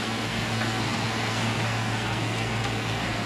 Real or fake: fake